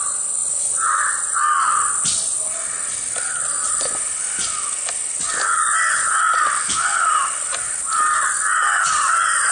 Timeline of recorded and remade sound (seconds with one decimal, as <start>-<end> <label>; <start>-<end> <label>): 0.0-0.4 recorded; 0.4-0.9 remade; 0.9-9.5 recorded